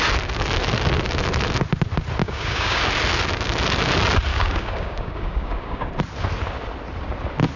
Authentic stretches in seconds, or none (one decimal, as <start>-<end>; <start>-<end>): 0.0-2.2; 2.8-4.3; 5.9-7.6